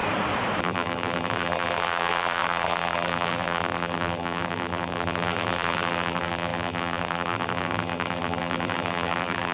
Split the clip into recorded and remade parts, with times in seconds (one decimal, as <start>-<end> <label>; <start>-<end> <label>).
0.0-0.6 recorded; 0.6-9.5 remade

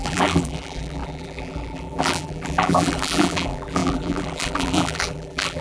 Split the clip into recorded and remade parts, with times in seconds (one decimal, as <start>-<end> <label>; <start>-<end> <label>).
0.0-5.6 remade